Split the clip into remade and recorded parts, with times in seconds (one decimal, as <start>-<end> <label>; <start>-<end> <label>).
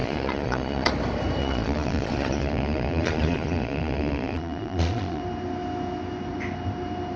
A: 0.0-0.9 remade; 0.9-1.4 recorded; 1.4-5.2 remade; 5.2-7.2 recorded